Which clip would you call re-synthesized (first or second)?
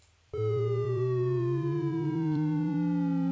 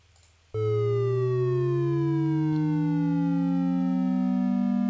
first